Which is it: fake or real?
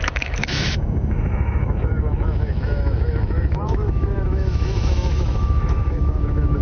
fake